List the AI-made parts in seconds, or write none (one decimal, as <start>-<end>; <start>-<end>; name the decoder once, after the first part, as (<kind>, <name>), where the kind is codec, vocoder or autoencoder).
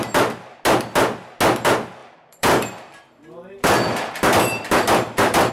2.0-5.5 (vocoder, BigVGAN v2)